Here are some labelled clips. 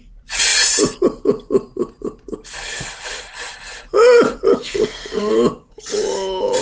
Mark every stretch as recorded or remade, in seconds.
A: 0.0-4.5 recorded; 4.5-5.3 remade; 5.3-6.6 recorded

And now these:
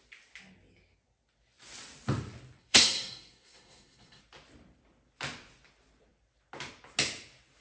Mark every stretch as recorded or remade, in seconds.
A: 0.0-2.6 recorded; 2.6-4.2 remade; 4.2-7.6 recorded

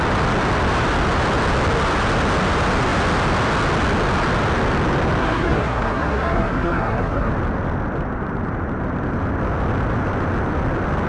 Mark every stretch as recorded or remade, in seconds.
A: 0.0-5.2 recorded; 5.2-7.3 remade; 7.3-11.1 recorded

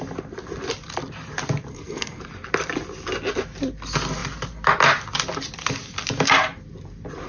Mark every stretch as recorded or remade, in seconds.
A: 0.0-1.7 recorded; 1.7-2.2 remade; 2.2-7.3 recorded

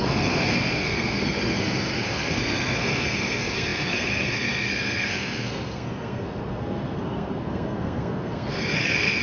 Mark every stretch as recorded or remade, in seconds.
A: 0.0-9.2 remade

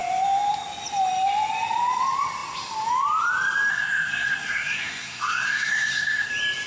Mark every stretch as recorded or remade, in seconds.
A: 0.0-3.7 recorded; 3.7-6.3 remade; 6.3-6.7 recorded

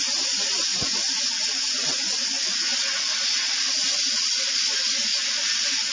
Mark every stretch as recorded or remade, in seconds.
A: 0.0-5.9 recorded